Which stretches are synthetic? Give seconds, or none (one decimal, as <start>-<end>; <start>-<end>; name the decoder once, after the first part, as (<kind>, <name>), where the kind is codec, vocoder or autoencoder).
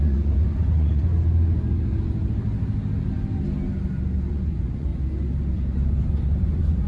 0.0-1.1 (vocoder, Vocos); 4.3-4.9; 6.4-6.9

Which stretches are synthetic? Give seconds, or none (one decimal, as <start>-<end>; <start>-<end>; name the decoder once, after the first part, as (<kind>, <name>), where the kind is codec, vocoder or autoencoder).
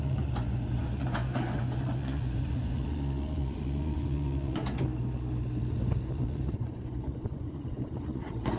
0.0-4.6 (vocoder, Vocos); 5.7-8.6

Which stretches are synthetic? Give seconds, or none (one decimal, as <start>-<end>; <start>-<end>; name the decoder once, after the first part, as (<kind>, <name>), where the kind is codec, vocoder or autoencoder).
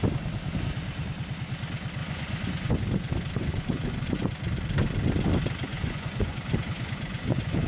2.0-2.7 (vocoder, Vocos); 3.4-4.3; 5.7-7.7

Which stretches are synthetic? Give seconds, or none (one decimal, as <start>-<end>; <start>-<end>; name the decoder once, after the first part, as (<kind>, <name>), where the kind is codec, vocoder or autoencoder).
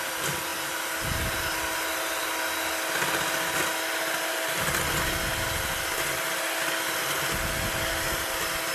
none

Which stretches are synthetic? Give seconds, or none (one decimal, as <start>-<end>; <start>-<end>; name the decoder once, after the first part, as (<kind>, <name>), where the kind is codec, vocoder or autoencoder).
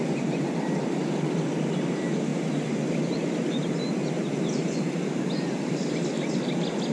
none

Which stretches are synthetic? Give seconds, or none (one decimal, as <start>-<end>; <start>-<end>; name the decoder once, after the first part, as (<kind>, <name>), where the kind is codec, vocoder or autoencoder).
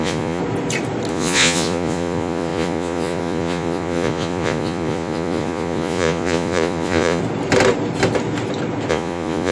0.0-0.4 (vocoder, Vocos); 1.1-7.2; 8.9-9.5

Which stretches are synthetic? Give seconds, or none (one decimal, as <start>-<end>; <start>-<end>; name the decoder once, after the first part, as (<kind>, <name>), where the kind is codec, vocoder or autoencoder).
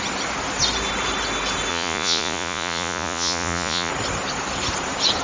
1.7-3.9 (vocoder, Vocos)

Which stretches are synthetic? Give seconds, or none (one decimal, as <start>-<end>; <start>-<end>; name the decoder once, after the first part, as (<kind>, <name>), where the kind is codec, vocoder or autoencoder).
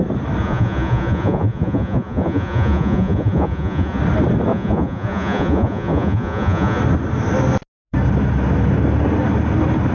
0.4-4.0 (vocoder, Vocos); 4.5-6.8